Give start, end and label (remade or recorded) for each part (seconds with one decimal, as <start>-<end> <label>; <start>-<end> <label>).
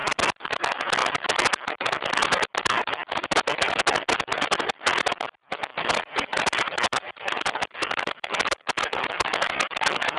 0.0-0.6 remade; 0.6-5.7 recorded; 5.7-9.0 remade; 9.0-10.2 recorded